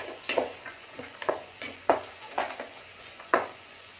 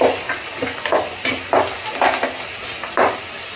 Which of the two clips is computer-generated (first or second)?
first